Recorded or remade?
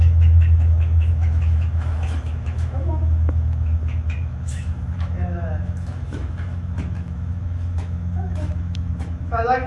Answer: remade